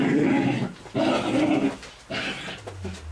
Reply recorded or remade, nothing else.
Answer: recorded